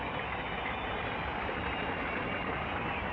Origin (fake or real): real